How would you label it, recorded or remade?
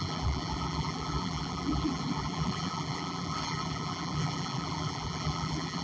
remade